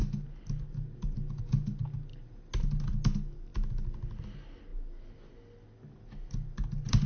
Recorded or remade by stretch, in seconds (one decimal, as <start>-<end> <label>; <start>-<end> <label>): 0.0-7.1 recorded